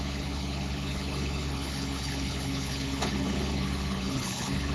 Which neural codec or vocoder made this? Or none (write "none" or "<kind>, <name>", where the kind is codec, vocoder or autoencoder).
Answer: codec, HILCodec